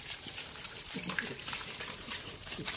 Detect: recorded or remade remade